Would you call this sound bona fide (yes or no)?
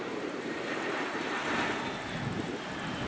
yes